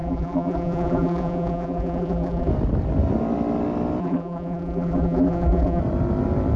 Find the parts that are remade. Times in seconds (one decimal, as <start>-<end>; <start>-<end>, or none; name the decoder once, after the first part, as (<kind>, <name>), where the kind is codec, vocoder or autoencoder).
0.0-2.5 (vocoder, BigVGAN v2); 4.0-5.8